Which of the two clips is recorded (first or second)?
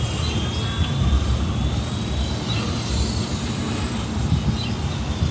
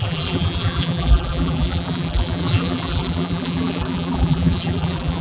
first